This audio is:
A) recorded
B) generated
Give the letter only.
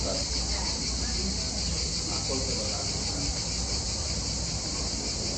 A